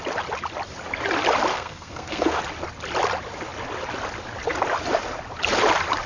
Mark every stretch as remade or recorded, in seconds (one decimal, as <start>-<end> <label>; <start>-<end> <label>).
0.0-1.5 recorded; 1.5-2.4 remade; 2.4-6.1 recorded

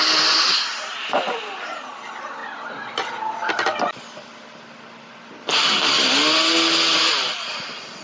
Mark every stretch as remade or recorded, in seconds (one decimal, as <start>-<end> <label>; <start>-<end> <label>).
0.0-0.9 recorded; 0.9-1.9 remade; 1.9-8.0 recorded